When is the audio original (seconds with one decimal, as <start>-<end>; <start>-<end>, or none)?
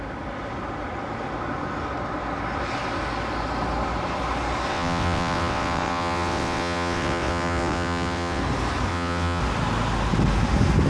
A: 0.0-4.7; 8.4-8.9; 9.4-10.9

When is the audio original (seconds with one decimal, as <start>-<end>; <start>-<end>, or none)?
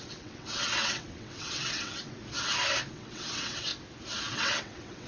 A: 2.2-2.9; 3.7-4.3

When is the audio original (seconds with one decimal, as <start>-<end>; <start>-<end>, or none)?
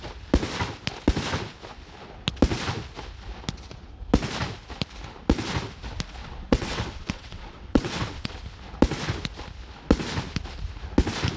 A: 0.0-6.2; 8.3-11.4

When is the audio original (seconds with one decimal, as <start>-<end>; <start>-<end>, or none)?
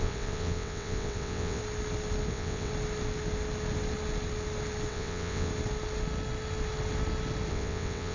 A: 1.6-2.3; 2.7-4.9; 5.5-7.5